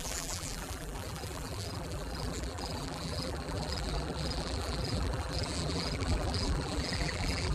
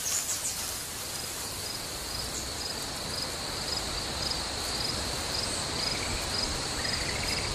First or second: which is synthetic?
first